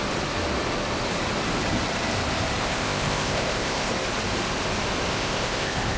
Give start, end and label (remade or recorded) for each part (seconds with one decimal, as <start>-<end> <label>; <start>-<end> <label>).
0.0-2.6 recorded; 2.6-3.9 remade; 3.9-5.1 recorded; 5.1-6.0 remade